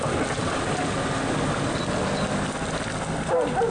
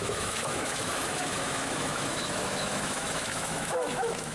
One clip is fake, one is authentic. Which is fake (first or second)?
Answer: second